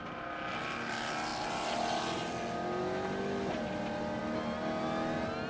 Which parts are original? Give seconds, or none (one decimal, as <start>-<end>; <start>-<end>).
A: 0.0-5.5